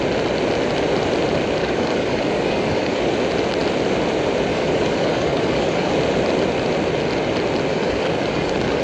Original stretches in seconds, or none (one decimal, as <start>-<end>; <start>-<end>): 0.0-1.6; 3.1-4.5; 5.9-7.7